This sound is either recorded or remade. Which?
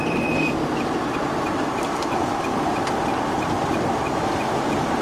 remade